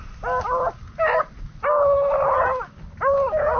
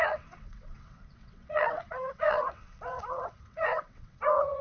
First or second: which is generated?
second